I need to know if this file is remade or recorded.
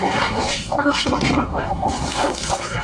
remade